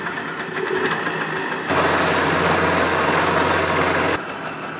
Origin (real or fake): real